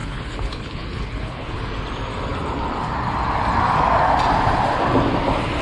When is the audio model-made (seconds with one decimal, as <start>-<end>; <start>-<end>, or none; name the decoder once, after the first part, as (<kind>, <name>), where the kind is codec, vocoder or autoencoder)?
0.0-1.6 (codec, HILCodec)